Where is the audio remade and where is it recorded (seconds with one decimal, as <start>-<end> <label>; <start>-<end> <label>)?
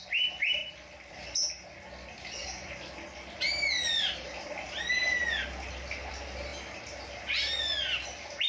0.0-0.6 recorded; 0.6-1.1 remade; 1.1-8.5 recorded